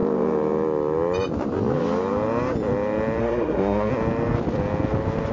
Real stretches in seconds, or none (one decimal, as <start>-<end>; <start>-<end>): 0.0-3.2; 3.9-5.3